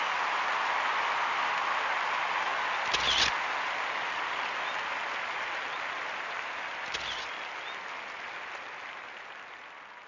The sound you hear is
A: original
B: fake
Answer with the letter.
A